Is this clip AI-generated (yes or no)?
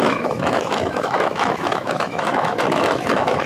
yes